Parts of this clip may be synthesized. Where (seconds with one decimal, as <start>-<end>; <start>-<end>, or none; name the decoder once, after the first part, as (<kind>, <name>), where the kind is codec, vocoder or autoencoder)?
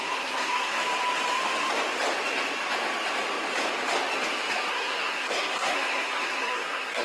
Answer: 0.0-0.8 (codec, SNAC); 4.7-7.0